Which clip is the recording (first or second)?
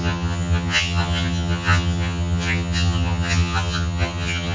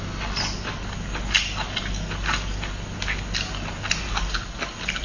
second